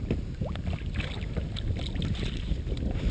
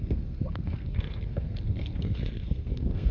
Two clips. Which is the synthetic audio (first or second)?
second